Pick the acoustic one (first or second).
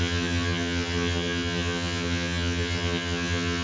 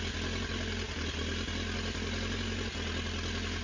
second